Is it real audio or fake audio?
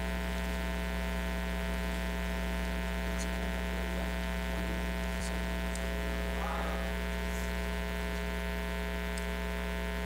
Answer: real